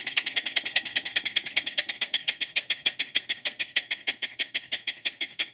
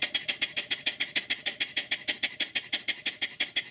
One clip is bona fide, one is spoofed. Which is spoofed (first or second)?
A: first